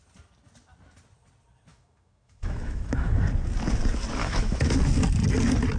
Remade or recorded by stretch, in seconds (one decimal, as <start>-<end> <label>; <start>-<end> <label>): 0.0-1.7 recorded; 1.7-3.2 remade; 3.2-4.2 recorded; 4.2-4.7 remade; 4.7-5.8 recorded